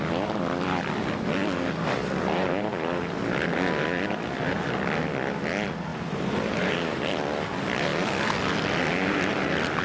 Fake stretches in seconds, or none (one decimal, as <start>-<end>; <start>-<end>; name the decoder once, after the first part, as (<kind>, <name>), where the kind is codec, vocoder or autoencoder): 5.9-7.1 (vocoder, BigVGAN v2)